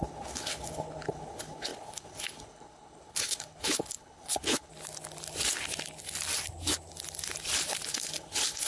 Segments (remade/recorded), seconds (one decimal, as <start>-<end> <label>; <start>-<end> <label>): 0.0-4.7 remade; 4.7-7.9 recorded; 7.9-8.7 remade